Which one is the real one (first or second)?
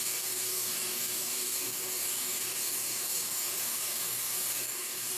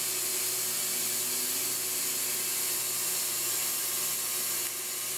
second